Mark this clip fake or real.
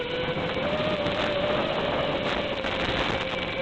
real